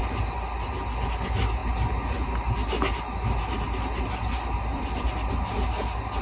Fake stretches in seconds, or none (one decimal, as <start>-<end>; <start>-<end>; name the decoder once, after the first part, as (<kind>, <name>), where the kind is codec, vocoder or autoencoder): none

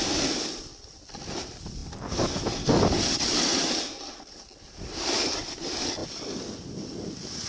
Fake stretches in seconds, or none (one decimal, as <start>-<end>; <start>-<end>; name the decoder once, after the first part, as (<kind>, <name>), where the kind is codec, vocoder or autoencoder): none

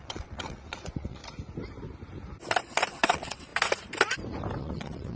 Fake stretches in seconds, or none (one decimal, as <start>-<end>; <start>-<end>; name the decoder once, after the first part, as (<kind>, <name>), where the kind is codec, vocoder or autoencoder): 0.0-1.2 (vocoder, WaveNeXt); 2.9-3.5; 4.6-5.2

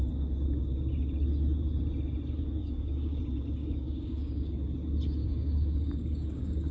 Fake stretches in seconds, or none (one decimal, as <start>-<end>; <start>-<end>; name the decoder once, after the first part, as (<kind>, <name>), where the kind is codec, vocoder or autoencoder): 2.6-3.2 (codec, DAC); 3.6-4.7; 5.2-6.7

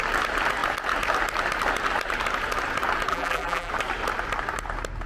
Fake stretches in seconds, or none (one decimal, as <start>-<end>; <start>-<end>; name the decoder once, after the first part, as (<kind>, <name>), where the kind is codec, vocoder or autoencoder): 3.1-3.7 (vocoder, BigVGAN v2)

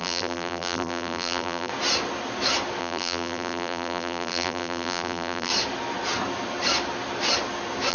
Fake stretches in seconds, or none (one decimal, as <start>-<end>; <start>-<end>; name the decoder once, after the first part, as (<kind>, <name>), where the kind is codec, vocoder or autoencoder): 0.0-1.7 (vocoder, BigVGAN v2); 2.8-5.5

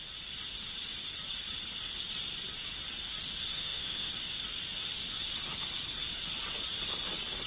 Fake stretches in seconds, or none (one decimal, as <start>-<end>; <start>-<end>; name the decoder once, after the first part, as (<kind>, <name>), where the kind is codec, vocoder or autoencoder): 3.5-4.1 (autoencoder, DAC-VAE)